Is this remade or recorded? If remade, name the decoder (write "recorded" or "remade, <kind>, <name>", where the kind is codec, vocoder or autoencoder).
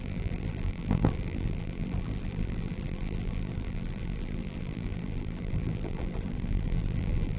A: remade, vocoder, BigVGAN v2